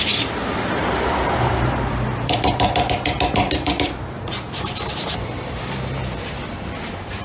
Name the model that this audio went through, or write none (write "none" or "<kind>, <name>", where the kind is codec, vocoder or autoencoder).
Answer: vocoder, BigVGAN v2